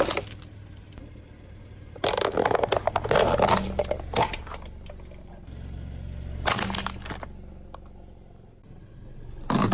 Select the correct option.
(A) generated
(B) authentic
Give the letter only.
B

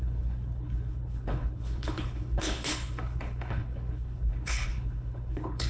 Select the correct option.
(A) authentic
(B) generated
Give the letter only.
B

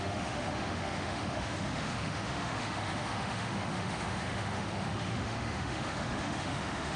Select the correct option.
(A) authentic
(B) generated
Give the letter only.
B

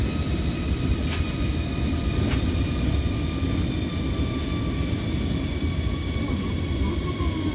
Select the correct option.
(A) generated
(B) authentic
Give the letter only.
B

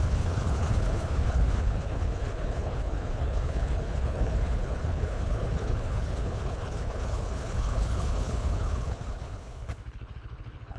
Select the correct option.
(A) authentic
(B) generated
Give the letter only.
B